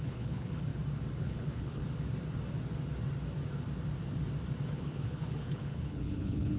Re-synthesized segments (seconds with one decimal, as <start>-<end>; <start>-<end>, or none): 0.0-0.7; 1.2-1.8; 4.7-6.6